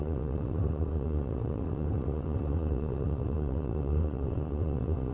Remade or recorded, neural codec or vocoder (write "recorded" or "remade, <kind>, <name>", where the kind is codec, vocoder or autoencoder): remade, vocoder, WaveNeXt